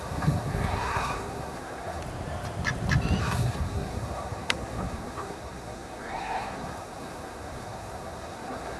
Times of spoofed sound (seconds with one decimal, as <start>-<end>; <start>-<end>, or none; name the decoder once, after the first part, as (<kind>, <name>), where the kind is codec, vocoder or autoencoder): 0.0-2.0 (codec, SNAC); 3.2-8.8

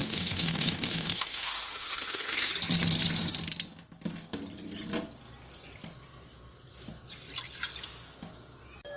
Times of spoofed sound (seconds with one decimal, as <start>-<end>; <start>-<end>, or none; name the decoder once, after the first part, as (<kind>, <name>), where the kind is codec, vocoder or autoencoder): 0.0-2.5 (autoencoder, DAC-VAE)

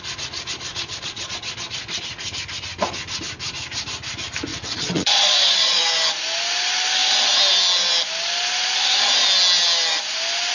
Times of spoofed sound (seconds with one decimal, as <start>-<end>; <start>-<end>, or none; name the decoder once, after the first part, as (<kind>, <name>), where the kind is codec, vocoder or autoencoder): 0.7-1.4 (vocoder, Vocos); 4.5-5.8

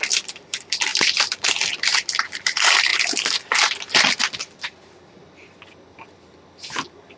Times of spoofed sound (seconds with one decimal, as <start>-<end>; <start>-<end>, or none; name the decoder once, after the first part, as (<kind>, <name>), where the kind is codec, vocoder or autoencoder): 0.0-2.9 (vocoder, BigVGAN v2); 4.1-7.2